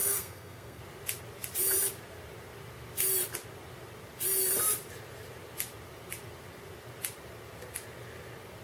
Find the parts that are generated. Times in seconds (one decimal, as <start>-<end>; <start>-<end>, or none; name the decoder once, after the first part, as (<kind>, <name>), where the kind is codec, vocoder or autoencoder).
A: 0.0-0.8 (codec, SNAC)